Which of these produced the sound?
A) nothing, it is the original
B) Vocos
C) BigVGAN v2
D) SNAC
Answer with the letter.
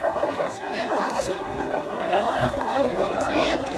D